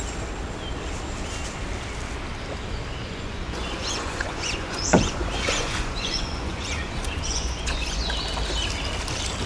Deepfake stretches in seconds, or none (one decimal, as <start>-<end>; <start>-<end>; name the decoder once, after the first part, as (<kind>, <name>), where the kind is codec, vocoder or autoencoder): 3.0-8.1 (vocoder, Vocos)